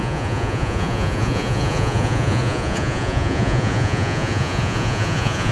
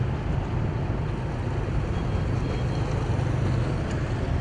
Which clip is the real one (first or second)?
second